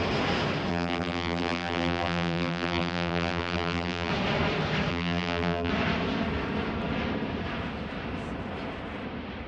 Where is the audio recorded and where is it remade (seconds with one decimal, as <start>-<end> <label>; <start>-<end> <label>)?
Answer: 0.0-0.7 recorded; 0.7-4.1 remade; 4.1-4.9 recorded; 4.9-5.7 remade; 5.7-9.5 recorded